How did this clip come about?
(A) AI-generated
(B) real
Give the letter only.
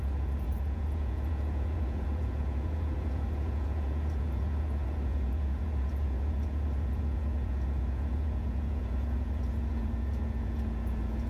A